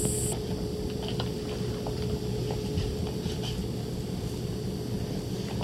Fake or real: real